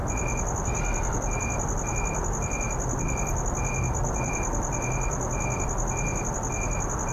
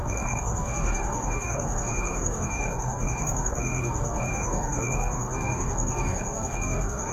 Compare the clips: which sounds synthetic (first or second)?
second